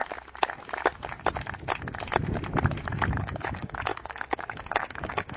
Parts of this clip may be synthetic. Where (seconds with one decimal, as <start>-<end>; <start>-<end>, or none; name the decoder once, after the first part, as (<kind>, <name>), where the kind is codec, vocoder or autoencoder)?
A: 3.1-5.4 (codec, DAC)